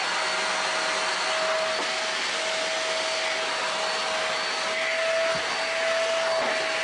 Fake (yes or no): no